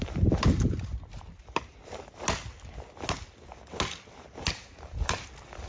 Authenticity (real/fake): real